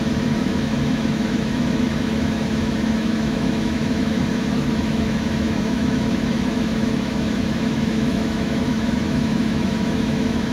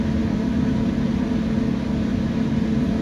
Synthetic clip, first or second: first